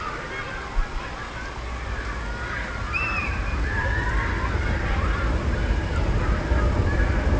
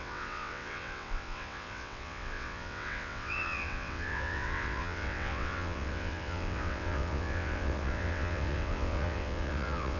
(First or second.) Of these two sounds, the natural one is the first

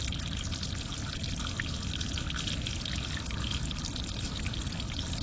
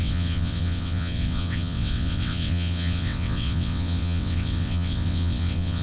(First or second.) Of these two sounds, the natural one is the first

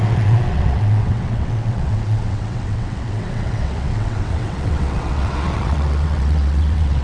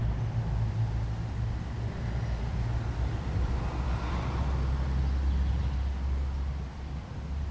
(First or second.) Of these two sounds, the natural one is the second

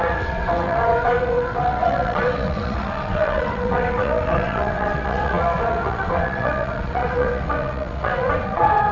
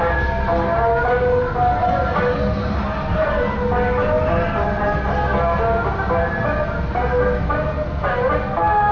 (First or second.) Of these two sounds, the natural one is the second